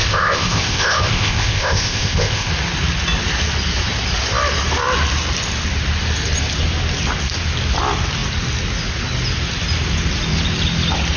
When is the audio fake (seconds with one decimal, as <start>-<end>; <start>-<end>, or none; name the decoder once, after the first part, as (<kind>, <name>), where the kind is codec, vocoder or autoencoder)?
0.0-2.5 (codec, ZipCodec)